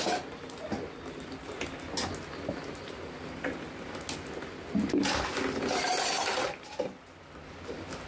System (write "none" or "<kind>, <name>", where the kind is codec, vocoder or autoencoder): none